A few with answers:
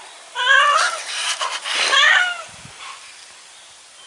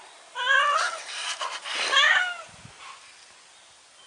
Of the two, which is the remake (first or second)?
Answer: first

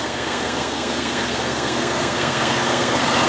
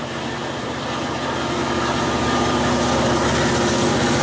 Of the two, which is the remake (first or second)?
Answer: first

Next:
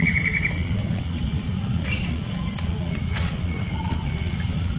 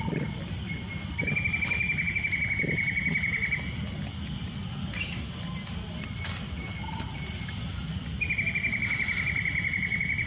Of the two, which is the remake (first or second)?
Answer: first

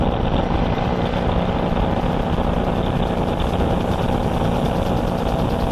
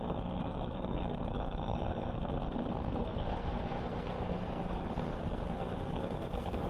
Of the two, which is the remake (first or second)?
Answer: second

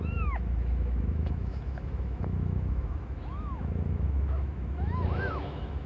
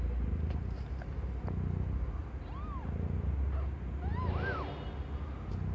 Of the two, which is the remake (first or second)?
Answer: first